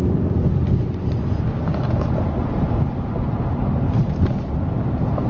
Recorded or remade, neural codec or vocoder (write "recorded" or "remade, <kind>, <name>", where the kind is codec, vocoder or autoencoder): recorded